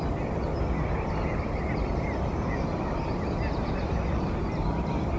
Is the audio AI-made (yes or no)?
no